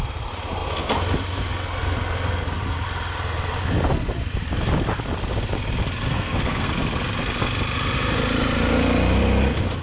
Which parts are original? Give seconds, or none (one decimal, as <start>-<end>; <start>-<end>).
0.0-6.1; 6.7-9.8